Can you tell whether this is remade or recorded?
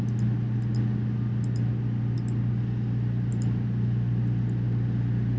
recorded